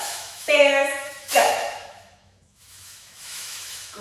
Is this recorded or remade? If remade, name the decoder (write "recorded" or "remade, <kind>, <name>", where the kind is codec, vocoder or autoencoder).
remade, autoencoder, DAC-VAE